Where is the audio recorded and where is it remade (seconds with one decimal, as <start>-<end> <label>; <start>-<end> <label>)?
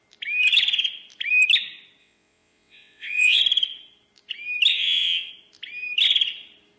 0.0-2.0 recorded; 2.0-3.4 remade; 3.4-4.7 recorded; 4.7-5.3 remade; 5.3-6.8 recorded